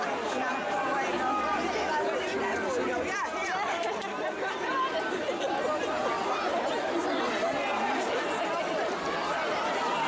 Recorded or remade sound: recorded